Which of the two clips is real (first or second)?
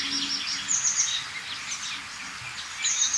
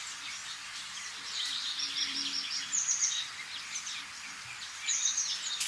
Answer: first